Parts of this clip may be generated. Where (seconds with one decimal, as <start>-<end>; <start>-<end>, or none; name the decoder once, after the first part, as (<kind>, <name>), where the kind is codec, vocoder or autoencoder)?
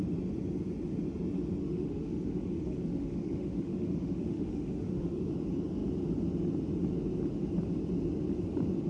1.6-5.3 (autoencoder, DAC-VAE)